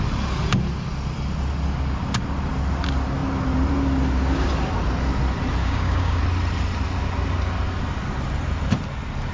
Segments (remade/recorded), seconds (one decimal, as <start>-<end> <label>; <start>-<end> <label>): 0.0-5.6 recorded; 5.6-6.2 remade; 6.2-9.3 recorded

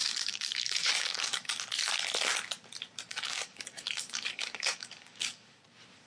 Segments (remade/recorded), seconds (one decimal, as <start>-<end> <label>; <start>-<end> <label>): 0.0-1.5 remade; 1.5-3.1 recorded; 3.1-5.6 remade; 5.6-6.1 recorded

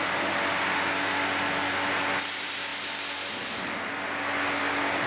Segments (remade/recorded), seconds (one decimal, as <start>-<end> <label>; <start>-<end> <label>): 0.0-5.1 recorded

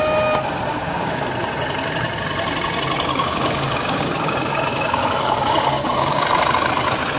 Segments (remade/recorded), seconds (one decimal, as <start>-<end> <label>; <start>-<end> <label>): 0.0-0.7 recorded; 0.7-1.2 remade; 1.2-3.1 recorded; 3.1-6.2 remade; 6.2-7.2 recorded

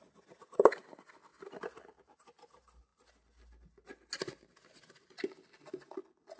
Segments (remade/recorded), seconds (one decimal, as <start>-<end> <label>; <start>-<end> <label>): 0.0-6.4 recorded

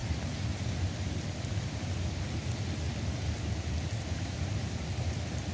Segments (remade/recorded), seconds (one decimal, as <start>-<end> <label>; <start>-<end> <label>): 0.0-5.5 recorded

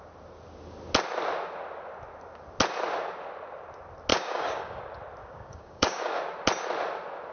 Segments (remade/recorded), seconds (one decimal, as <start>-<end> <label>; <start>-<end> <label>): 0.0-4.1 recorded; 4.1-4.8 remade; 4.8-5.2 recorded; 5.2-6.2 remade; 6.2-7.3 recorded